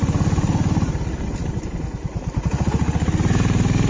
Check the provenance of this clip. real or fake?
real